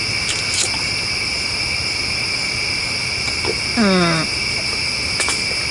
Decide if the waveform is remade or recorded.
recorded